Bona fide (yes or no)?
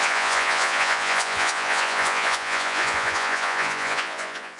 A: no